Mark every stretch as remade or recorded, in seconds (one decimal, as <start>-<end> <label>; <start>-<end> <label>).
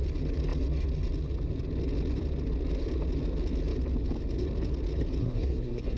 0.0-5.2 recorded; 5.2-6.0 remade